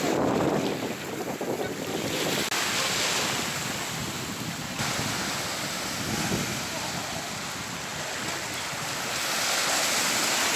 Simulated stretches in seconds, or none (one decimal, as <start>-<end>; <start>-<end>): none